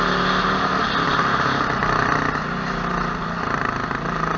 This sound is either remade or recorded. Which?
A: recorded